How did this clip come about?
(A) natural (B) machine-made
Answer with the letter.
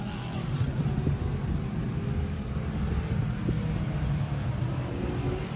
A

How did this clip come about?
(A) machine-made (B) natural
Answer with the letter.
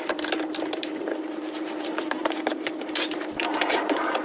A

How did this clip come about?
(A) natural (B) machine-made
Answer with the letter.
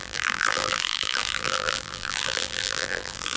B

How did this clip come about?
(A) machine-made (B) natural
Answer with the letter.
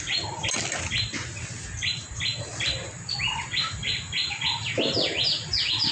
B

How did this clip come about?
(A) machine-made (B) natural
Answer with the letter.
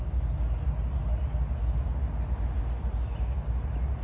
B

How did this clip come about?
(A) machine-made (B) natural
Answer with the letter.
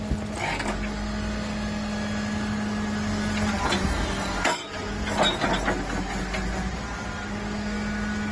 B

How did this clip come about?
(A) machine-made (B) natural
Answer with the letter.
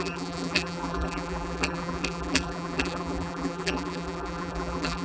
A